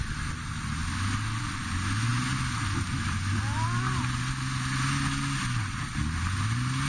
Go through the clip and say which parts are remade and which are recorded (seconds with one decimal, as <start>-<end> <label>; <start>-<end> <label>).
0.0-6.9 recorded